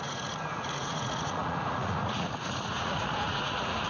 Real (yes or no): no